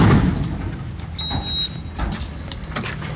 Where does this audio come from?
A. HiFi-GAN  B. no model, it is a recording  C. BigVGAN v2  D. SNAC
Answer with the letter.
B